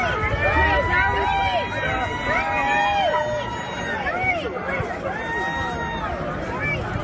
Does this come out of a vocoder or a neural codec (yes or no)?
no